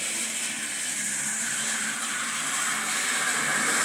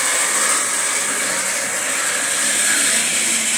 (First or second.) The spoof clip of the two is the second